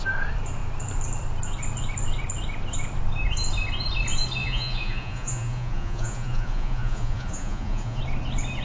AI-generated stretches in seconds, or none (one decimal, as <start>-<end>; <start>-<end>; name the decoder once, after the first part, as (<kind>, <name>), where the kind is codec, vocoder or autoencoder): 4.4-8.0 (vocoder, Vocos)